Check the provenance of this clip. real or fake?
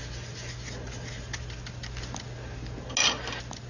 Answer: real